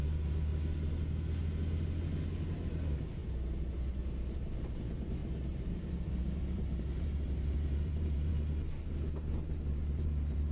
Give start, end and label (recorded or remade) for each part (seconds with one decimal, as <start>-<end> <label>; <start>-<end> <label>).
0.0-0.5 remade; 0.5-2.5 recorded; 2.5-3.2 remade; 3.2-4.4 recorded; 4.4-5.2 remade; 5.2-5.7 recorded; 5.7-8.3 remade; 8.3-9.7 recorded; 9.7-10.5 remade